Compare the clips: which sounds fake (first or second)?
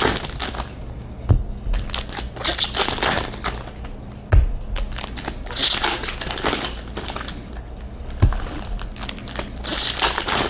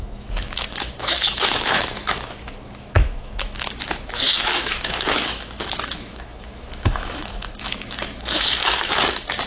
second